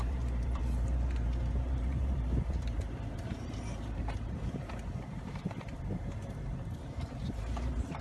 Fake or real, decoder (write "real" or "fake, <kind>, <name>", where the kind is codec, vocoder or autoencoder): fake, vocoder, BigVGAN v2